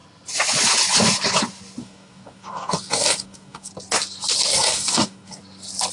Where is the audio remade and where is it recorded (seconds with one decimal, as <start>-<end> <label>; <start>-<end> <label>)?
0.0-1.8 recorded; 1.8-3.7 remade; 3.7-4.5 recorded; 4.5-5.4 remade; 5.4-5.9 recorded